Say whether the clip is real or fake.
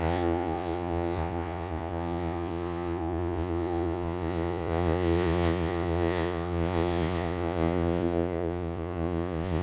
fake